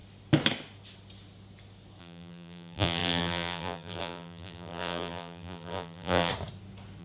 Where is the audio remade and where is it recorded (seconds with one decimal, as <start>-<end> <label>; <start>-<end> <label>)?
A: 0.0-2.0 recorded; 2.0-6.3 remade; 6.3-7.0 recorded